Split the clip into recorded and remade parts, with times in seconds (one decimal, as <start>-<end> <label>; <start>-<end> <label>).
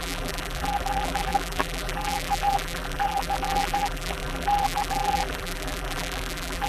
0.0-6.7 remade